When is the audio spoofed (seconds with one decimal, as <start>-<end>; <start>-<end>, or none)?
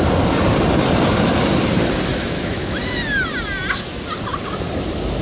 2.1-2.8